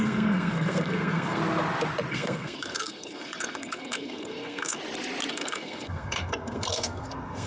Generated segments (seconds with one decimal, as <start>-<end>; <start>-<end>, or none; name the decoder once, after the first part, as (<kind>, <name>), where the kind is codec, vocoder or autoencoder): 0.0-1.4 (codec, SNAC); 2.1-4.8; 5.3-7.5

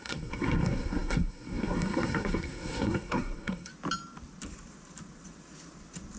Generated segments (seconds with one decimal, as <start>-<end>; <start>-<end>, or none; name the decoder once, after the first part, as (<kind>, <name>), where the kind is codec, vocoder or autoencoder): 0.0-3.7 (codec, SNAC)

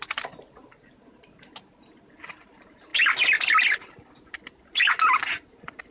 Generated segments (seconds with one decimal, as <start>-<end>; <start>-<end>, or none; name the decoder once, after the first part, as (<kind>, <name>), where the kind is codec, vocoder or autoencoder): none

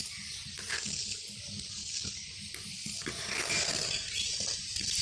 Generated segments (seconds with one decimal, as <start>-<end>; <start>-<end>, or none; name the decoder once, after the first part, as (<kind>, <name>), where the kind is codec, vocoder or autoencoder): none

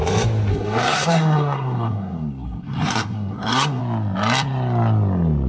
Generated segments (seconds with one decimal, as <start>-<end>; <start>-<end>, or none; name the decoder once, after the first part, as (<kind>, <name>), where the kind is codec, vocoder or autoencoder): 0.5-3.8 (codec, SNAC)

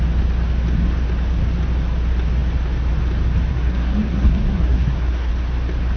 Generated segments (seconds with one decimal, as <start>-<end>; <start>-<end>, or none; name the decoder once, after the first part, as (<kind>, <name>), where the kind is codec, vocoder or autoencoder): 3.5-5.3 (codec, SNAC)